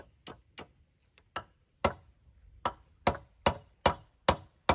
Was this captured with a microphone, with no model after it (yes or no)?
yes